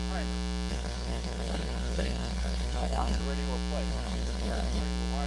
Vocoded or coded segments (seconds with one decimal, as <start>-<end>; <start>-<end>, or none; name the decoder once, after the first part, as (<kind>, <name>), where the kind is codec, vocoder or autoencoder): 0.7-3.2 (codec, SNAC); 3.9-4.8